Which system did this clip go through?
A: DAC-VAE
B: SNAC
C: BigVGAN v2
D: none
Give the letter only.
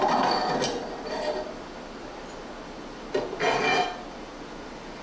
D